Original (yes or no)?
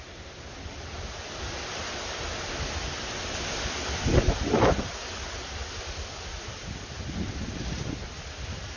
no